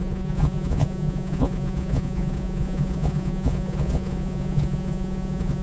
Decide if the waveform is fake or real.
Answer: fake